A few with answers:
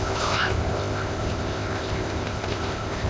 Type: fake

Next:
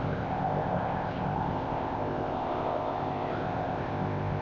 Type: fake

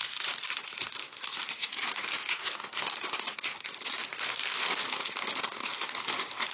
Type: real